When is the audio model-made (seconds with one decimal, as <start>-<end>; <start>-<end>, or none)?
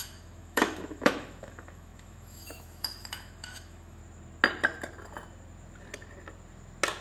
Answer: 0.0-4.0